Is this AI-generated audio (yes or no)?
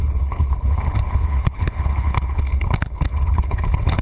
yes